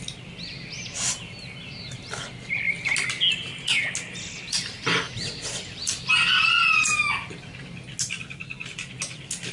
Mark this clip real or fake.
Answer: real